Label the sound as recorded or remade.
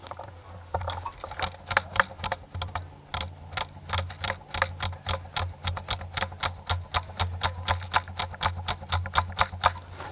recorded